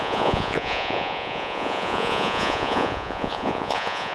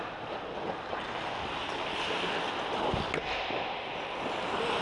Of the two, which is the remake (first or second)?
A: first